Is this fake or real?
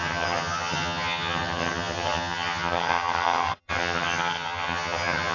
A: fake